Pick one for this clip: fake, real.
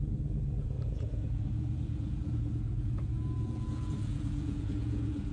fake